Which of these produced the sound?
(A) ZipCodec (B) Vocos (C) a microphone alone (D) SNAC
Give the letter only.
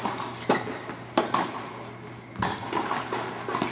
C